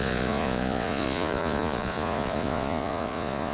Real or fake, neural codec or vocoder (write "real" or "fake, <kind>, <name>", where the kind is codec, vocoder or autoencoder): fake, vocoder, Vocos